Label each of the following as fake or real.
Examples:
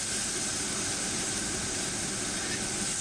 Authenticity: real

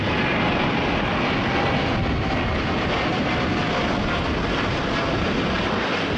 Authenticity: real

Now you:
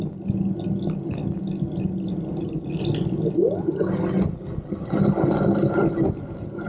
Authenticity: real